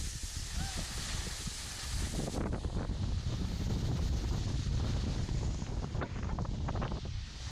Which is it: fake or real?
real